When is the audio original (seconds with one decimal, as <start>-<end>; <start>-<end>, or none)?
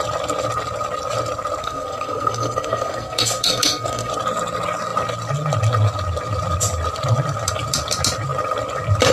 0.0-1.6; 4.1-9.1